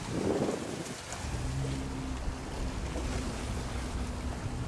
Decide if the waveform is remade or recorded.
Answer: recorded